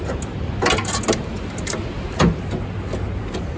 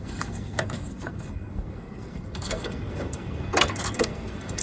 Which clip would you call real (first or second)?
first